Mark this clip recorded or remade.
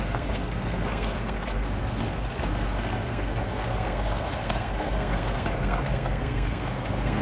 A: remade